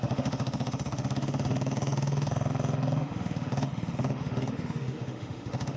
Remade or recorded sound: remade